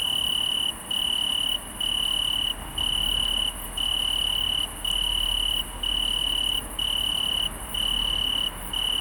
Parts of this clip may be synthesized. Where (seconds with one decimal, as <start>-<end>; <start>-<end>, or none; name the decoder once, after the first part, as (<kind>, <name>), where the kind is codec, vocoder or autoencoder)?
none